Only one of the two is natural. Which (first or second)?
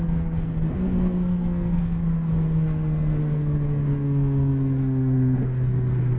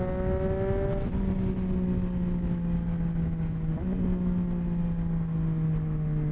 second